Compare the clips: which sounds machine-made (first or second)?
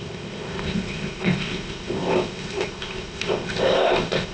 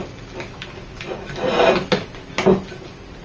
first